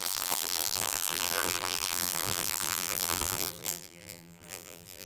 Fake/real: fake